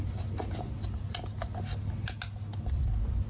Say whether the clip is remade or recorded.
recorded